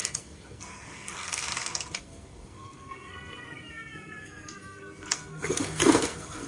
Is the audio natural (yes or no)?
no